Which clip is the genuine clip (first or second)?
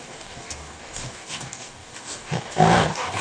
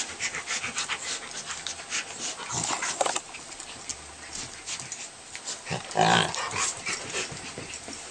second